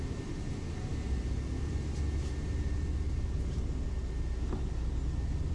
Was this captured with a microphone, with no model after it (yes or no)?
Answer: yes